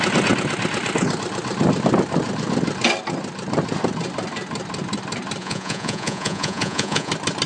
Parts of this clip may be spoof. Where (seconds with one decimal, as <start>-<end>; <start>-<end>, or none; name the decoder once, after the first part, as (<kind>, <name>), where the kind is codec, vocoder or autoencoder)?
5.4-7.1 (vocoder, Vocos)